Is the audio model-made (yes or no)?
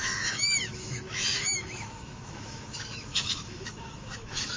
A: yes